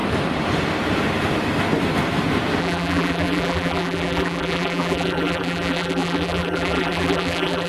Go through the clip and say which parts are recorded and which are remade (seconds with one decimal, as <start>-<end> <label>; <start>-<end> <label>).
0.0-2.6 recorded; 2.6-7.7 remade